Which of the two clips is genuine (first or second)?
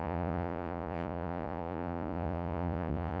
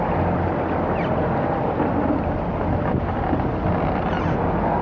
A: second